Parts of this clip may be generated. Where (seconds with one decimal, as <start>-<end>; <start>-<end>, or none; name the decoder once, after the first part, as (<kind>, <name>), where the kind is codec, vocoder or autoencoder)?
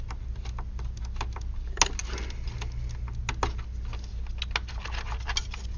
none